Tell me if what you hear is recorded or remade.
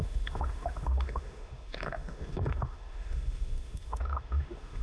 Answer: remade